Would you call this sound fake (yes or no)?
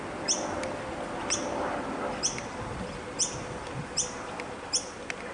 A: no